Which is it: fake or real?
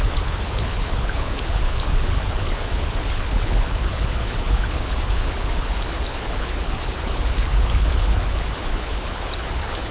fake